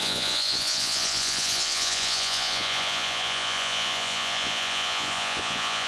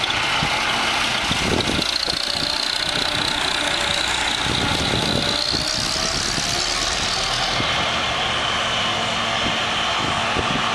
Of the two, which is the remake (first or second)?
first